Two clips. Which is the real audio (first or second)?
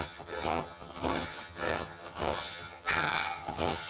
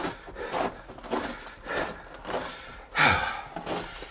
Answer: second